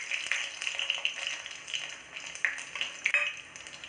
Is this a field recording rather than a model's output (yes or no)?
yes